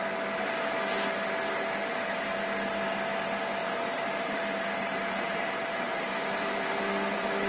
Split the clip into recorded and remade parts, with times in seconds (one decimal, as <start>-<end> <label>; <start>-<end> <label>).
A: 0.0-3.6 recorded; 3.6-6.8 remade; 6.8-7.5 recorded